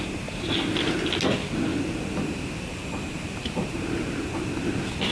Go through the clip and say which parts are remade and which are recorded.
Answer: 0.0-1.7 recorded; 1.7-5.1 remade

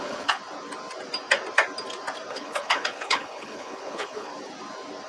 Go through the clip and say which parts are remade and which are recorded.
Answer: 0.0-0.4 remade; 0.4-2.3 recorded; 2.3-4.3 remade; 4.3-5.1 recorded

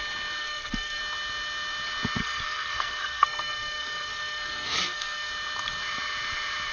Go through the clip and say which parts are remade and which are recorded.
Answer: 0.0-0.4 recorded; 0.4-1.0 remade; 1.0-2.2 recorded; 2.2-5.3 remade; 5.3-6.7 recorded

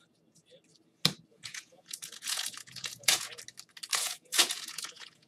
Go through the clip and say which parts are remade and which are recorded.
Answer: 0.0-1.3 recorded; 1.3-3.4 remade; 3.4-3.9 recorded; 3.9-5.3 remade

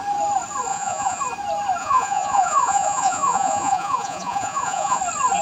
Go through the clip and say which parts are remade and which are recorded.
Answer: 0.0-0.7 recorded; 0.7-1.2 remade; 1.2-1.8 recorded; 1.8-5.0 remade; 5.0-5.4 recorded

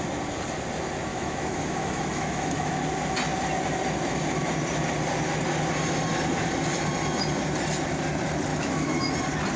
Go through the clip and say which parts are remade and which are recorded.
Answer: 0.0-1.1 recorded; 1.1-2.7 remade; 2.7-8.5 recorded; 8.5-9.0 remade; 9.0-9.6 recorded

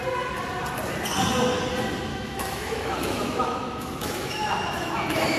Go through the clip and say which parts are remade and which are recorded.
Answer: 0.0-2.1 recorded; 2.1-5.4 remade

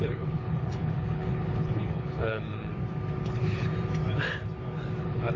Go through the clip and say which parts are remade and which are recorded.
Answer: 0.0-2.7 remade; 2.7-3.2 recorded; 3.2-3.7 remade; 3.7-5.0 recorded; 5.0-5.4 remade